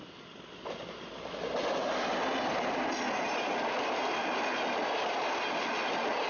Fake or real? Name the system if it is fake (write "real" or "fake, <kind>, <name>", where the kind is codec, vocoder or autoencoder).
real